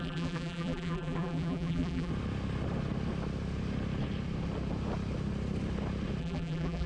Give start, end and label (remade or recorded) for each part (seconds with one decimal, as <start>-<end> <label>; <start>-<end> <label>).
0.0-2.1 remade; 2.1-6.2 recorded; 6.2-6.9 remade